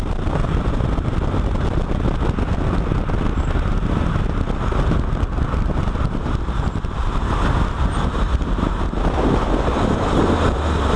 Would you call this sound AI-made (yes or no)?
no